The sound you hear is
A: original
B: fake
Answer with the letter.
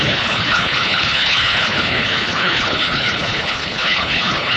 B